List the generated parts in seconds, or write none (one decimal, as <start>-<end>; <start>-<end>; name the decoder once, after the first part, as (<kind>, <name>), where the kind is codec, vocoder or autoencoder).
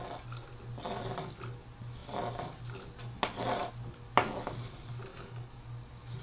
5.1-5.6 (codec, DAC)